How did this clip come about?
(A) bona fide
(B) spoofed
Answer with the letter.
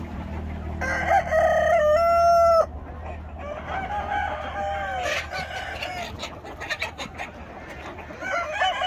A